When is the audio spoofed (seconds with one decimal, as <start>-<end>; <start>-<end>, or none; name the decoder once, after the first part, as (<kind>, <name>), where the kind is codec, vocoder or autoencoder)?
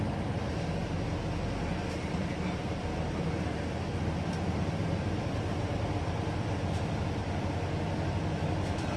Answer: 0.0-0.8 (vocoder, BigVGAN v2); 1.3-7.2; 8.1-9.0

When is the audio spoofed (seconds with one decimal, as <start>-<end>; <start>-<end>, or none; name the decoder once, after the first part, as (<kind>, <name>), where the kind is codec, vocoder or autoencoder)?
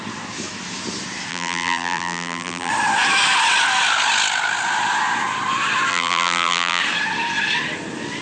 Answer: 1.3-2.7 (vocoder, BigVGAN v2); 5.9-6.8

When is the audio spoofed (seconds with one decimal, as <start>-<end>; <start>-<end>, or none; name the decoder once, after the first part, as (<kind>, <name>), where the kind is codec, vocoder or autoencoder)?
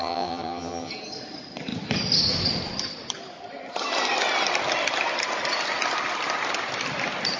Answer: 0.0-0.9 (vocoder, HiFi-GAN)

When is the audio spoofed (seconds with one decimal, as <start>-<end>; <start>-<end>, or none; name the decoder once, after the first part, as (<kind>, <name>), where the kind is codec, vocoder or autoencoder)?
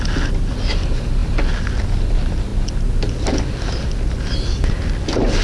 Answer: none